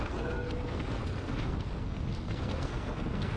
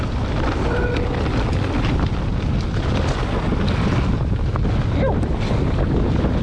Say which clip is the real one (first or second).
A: second